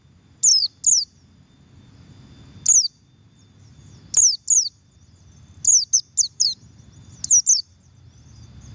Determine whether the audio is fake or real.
real